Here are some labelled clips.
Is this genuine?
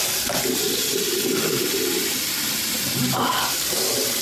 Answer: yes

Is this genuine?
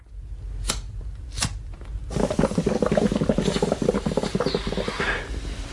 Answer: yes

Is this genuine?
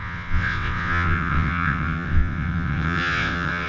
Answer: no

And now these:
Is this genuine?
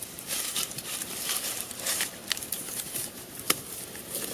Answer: no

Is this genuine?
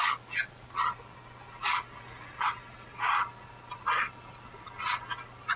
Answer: yes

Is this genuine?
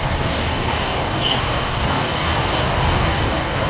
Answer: no